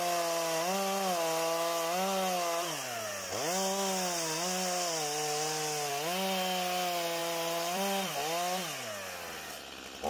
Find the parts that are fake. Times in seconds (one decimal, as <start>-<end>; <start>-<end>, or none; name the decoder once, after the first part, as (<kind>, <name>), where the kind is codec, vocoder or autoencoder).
7.2-8.1 (vocoder, BigVGAN v2)